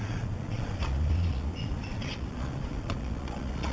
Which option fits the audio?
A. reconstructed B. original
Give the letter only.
A